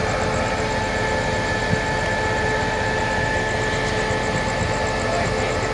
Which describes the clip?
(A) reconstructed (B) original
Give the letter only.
B